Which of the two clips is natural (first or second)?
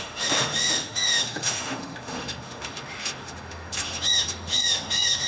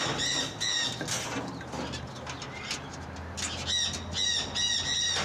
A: second